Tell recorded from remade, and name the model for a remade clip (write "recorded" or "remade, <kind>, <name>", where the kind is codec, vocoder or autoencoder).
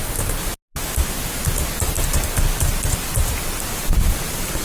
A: recorded